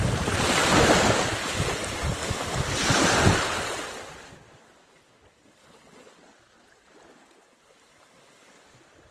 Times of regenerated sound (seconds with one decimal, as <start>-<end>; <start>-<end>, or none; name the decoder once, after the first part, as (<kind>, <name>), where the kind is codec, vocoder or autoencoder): none